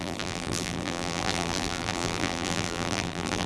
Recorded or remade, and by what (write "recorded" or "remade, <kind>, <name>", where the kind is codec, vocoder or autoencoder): remade, vocoder, BigVGAN v2